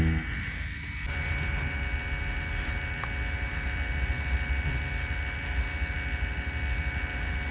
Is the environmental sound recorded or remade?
recorded